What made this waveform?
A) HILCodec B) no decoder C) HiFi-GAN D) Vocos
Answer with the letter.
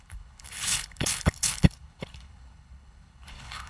A